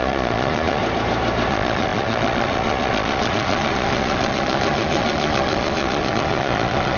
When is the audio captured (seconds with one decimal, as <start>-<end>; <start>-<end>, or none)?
0.8-1.5